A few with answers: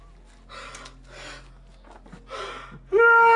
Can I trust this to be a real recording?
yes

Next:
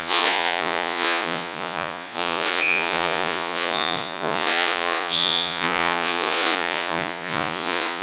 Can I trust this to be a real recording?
no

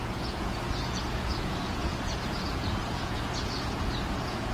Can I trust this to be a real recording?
no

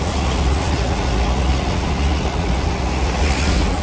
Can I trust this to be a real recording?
no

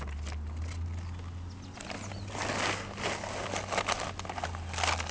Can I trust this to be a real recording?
yes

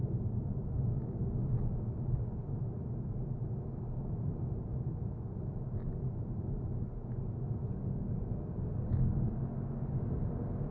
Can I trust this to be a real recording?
yes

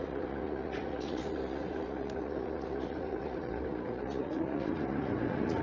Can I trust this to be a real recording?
no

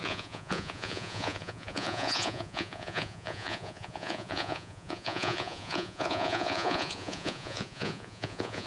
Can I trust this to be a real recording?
no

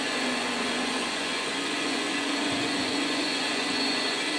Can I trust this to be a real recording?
no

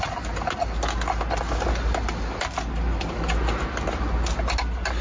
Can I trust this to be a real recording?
yes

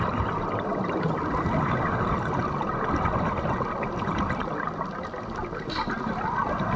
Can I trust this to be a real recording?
yes